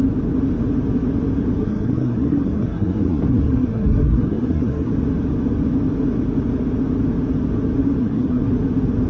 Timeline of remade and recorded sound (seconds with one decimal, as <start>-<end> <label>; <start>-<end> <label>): 0.0-1.6 recorded; 1.6-4.9 remade; 4.9-8.0 recorded; 8.0-8.5 remade; 8.5-9.1 recorded